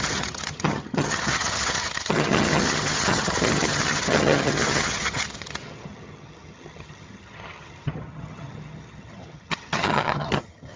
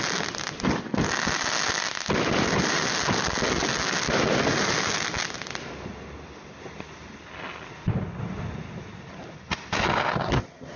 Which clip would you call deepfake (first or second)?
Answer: first